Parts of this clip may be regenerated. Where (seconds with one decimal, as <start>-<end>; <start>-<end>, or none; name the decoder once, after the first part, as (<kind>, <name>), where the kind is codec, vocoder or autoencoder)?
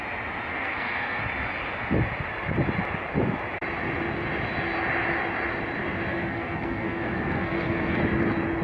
0.5-1.2 (codec, SNAC); 6.1-8.0